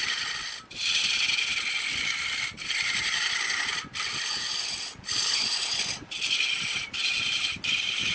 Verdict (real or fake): real